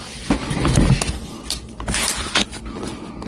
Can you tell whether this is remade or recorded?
recorded